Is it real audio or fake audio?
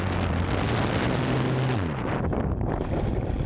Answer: real